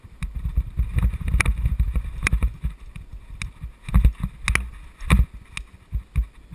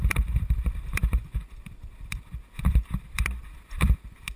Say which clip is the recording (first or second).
first